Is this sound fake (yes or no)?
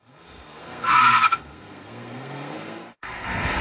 yes